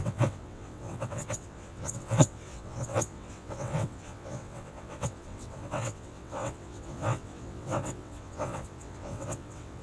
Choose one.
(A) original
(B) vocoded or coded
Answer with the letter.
B